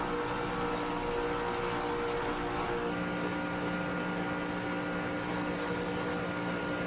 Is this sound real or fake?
real